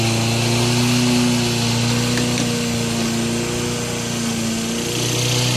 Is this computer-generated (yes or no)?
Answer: no